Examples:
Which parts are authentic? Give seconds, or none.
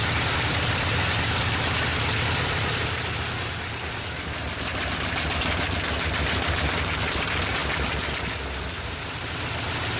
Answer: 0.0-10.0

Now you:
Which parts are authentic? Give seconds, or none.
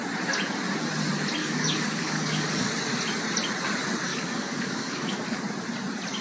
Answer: 0.0-1.4; 2.7-4.1; 5.4-6.2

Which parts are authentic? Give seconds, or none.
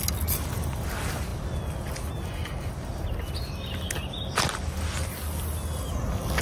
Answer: 0.0-6.4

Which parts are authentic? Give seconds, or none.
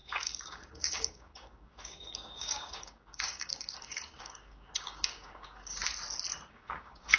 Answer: 5.8-6.5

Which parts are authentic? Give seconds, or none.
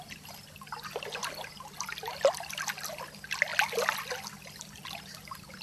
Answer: 0.0-5.6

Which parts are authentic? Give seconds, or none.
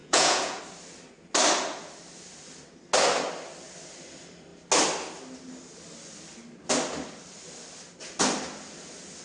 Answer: 0.6-9.2